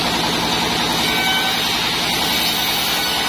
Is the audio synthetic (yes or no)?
no